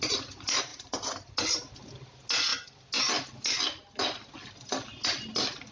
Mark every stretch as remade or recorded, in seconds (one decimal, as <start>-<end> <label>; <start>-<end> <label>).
0.0-5.7 recorded